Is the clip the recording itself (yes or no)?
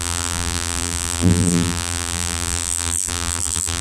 no